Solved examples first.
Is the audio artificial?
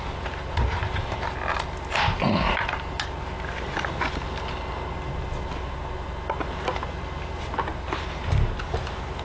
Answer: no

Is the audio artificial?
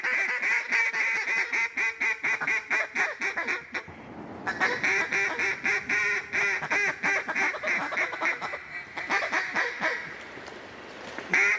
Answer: no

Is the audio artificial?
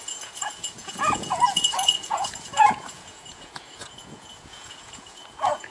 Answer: yes